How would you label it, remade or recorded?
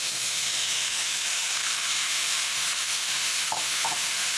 remade